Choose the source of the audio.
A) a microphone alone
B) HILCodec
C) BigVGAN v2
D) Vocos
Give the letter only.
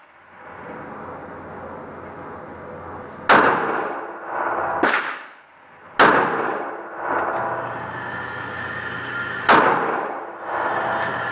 A